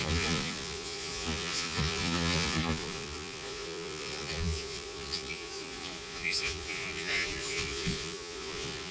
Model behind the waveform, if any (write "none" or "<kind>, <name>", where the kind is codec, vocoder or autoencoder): vocoder, Vocos